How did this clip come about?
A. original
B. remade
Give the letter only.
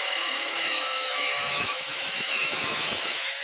B